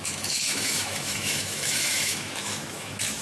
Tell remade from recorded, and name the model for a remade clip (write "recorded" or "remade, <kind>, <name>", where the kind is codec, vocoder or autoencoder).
remade, autoencoder, DAC-VAE